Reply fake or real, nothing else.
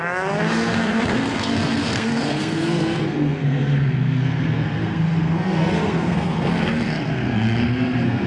fake